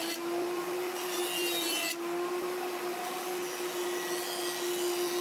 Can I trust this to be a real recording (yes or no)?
yes